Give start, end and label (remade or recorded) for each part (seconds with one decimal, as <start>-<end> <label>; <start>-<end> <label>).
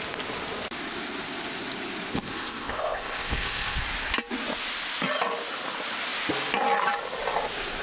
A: 0.0-2.1 recorded; 2.1-3.8 remade; 3.8-7.8 recorded